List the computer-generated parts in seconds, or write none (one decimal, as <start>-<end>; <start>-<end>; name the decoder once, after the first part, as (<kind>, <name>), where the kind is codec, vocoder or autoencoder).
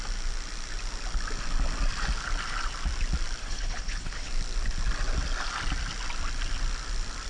3.4-4.3 (codec, HILCodec)